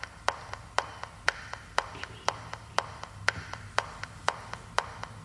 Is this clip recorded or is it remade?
recorded